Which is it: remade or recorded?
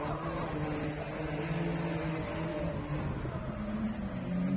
recorded